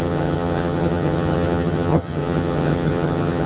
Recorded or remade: remade